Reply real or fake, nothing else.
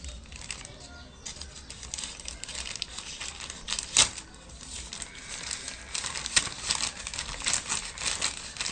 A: real